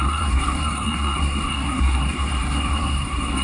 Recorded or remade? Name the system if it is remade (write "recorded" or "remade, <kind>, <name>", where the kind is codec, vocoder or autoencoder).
remade, codec, SNAC